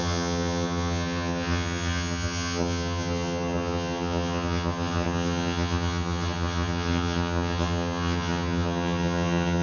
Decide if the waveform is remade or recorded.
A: remade